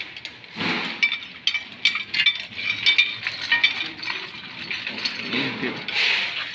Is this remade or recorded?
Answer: recorded